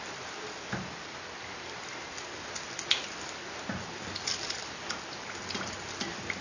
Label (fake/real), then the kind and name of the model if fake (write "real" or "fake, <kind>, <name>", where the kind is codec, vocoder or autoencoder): real